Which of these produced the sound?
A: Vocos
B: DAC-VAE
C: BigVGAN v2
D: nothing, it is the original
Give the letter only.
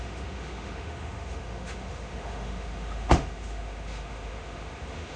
B